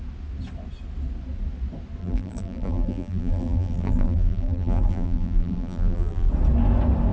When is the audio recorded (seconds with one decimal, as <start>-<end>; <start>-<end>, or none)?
0.0-2.0; 6.3-7.1